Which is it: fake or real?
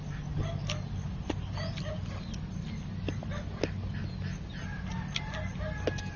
real